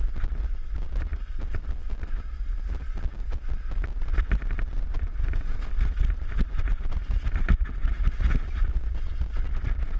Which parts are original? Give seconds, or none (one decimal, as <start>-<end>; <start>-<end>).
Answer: 0.0-5.1; 5.6-10.0